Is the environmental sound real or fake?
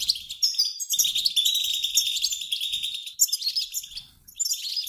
real